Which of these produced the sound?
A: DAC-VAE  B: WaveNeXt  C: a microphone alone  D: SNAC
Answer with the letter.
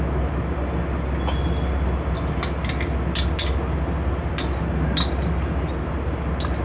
C